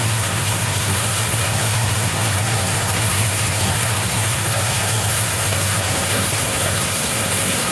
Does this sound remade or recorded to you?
remade